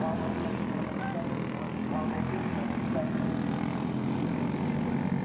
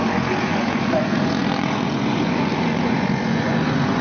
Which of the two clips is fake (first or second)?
second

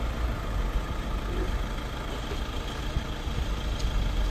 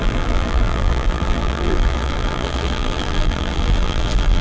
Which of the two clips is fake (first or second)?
second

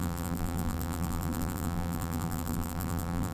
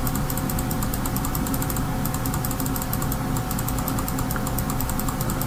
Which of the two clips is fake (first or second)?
first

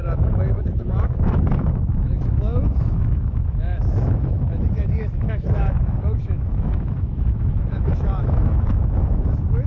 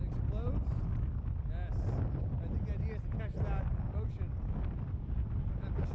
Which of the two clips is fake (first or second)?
first